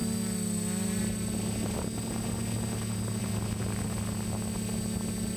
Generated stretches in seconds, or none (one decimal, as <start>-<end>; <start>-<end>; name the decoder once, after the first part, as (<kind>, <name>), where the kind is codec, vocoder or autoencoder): none